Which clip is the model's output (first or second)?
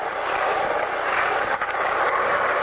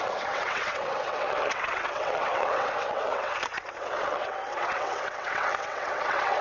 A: second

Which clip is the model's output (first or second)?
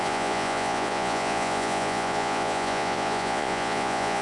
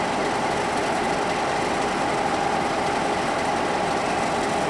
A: first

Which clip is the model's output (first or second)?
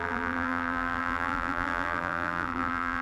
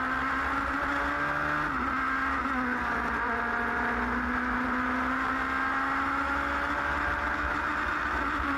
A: first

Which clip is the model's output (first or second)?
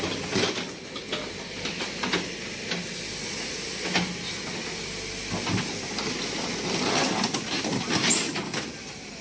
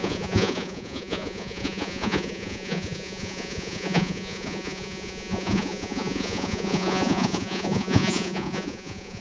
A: second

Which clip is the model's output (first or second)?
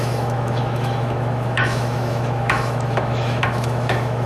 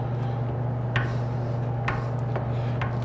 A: first